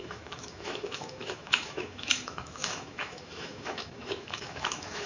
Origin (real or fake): fake